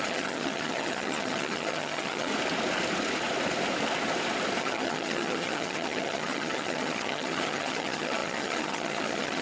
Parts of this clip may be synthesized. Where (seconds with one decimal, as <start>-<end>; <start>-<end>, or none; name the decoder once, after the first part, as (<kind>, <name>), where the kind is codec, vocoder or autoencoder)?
0.0-2.3 (vocoder, HiFi-GAN); 4.6-9.4